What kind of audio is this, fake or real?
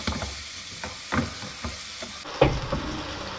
real